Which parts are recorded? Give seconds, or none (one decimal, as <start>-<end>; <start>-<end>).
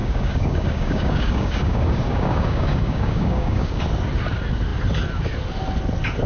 3.8-6.3